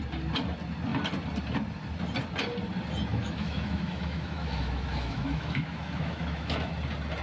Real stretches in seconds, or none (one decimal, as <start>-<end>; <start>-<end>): 0.0-3.1; 6.7-7.2